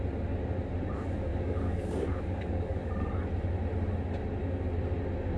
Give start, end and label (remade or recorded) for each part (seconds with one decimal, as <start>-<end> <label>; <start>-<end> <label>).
0.0-1.3 recorded; 1.3-3.3 remade; 3.3-5.4 recorded